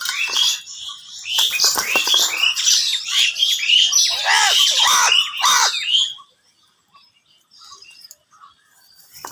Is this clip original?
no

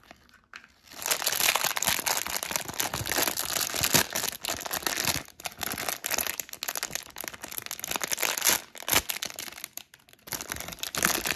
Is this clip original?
yes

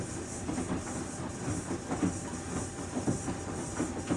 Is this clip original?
yes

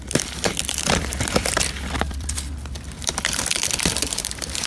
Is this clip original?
no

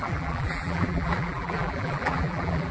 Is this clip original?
no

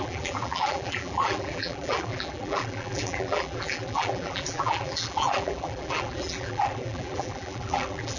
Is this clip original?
no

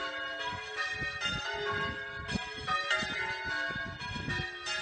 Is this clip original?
yes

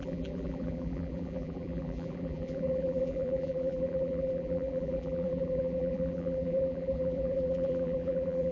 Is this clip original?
no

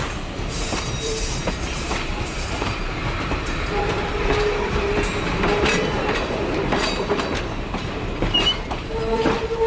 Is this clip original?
no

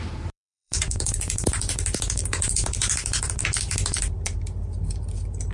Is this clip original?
no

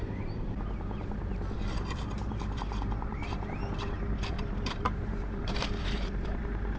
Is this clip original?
no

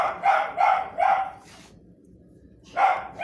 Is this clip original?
no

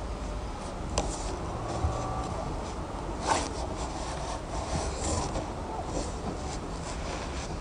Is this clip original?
yes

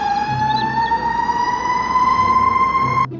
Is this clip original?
no